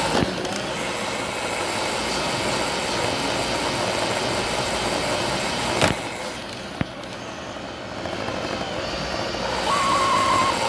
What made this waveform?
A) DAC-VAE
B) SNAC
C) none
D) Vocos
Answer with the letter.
C